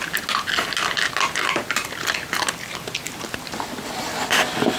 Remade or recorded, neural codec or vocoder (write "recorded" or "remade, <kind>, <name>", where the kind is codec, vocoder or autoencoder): recorded